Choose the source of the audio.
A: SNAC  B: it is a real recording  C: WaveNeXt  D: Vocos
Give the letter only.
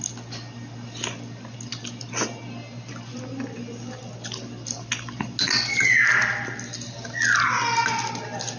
B